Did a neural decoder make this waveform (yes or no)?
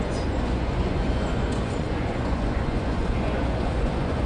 yes